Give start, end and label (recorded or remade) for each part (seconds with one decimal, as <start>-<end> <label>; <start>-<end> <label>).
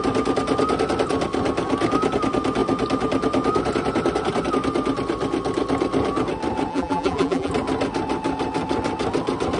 0.0-6.7 recorded; 6.7-7.5 remade; 7.5-9.6 recorded